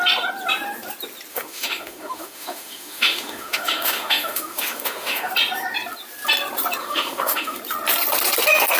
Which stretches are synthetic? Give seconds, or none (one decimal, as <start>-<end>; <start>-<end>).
1.3-5.3; 6.8-7.6